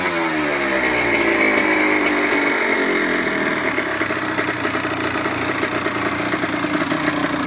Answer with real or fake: real